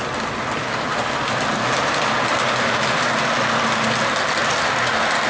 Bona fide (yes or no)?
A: yes